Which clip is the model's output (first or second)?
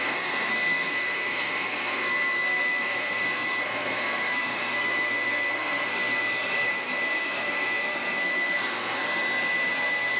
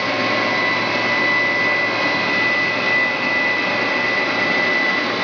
first